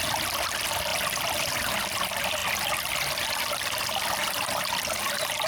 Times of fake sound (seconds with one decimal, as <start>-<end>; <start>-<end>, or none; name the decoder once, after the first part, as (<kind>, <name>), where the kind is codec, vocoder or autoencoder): none